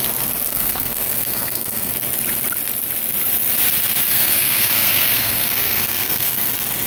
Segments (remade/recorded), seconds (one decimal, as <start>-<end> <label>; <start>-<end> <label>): 0.0-0.5 recorded; 0.5-1.9 remade; 1.9-4.1 recorded; 4.1-6.5 remade; 6.5-6.9 recorded